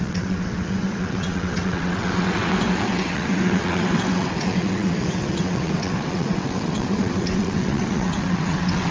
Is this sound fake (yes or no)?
yes